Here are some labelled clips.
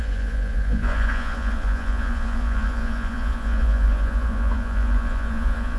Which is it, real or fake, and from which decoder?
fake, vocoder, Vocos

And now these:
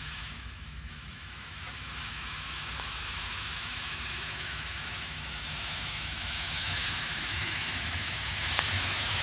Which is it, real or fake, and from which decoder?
fake, autoencoder, DAC-VAE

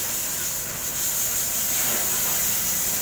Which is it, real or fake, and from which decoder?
real